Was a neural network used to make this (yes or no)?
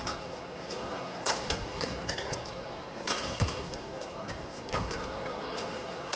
yes